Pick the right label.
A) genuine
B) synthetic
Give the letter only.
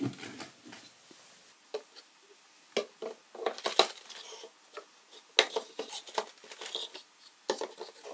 A